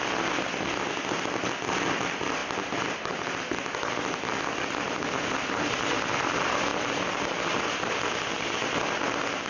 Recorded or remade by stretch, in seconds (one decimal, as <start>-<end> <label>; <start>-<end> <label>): 0.0-9.5 recorded